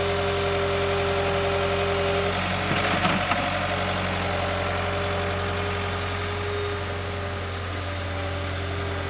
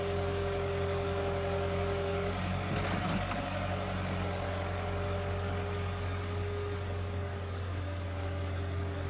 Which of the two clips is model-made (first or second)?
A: second